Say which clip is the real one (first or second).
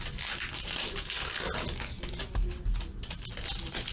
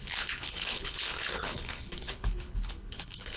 first